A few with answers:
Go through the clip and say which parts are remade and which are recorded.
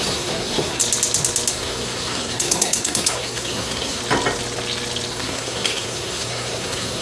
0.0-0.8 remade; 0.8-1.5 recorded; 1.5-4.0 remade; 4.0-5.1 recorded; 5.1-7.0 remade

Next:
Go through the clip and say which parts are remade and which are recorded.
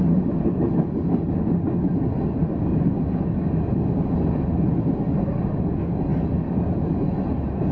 0.0-7.7 recorded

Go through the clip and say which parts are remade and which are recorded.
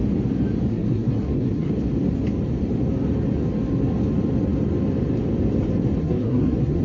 0.0-0.7 recorded; 0.7-1.7 remade; 1.7-6.0 recorded; 6.0-6.8 remade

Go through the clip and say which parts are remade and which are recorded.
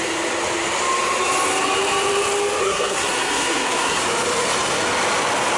0.0-2.6 recorded; 2.6-4.0 remade; 4.0-5.6 recorded